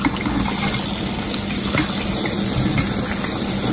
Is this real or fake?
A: real